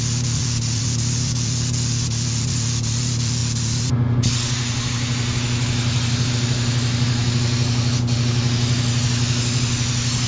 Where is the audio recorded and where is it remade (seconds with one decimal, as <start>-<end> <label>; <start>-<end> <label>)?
0.0-10.3 recorded